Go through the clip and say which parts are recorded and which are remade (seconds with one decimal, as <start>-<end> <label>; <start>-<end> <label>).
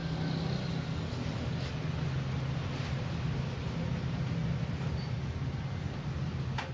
0.0-6.7 recorded